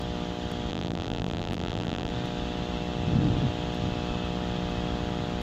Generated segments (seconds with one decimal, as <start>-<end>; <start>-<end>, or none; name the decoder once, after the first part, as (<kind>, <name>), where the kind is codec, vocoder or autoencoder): 0.7-2.1 (vocoder, BigVGAN v2)